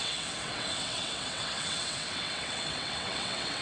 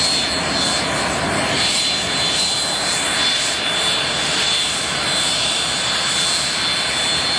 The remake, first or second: first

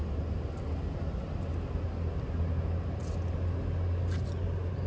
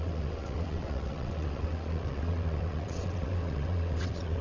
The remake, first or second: second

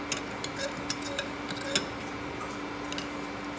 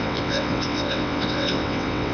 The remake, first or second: second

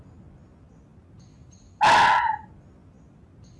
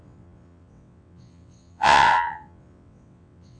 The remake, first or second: second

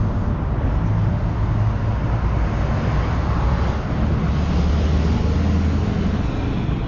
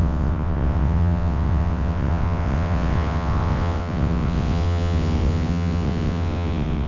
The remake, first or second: second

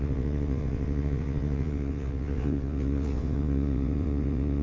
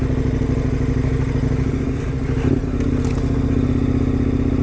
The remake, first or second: first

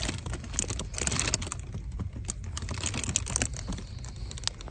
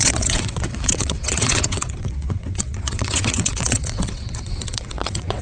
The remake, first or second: second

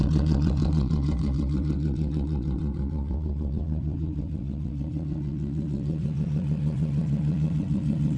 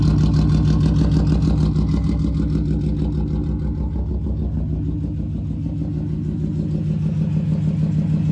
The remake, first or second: first